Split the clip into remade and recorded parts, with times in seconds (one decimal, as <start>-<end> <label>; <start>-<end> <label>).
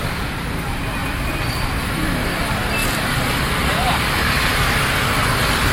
0.0-1.0 recorded; 1.0-1.7 remade; 1.7-5.7 recorded